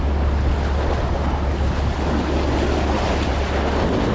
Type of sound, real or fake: real